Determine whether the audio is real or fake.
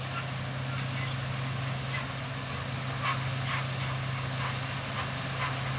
real